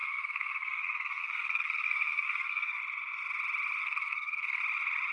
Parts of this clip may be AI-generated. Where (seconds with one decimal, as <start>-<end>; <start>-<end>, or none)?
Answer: 0.0-2.8; 3.8-4.6